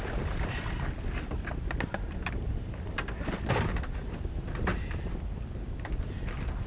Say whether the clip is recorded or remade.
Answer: recorded